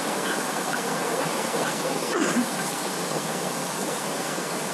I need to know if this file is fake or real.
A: fake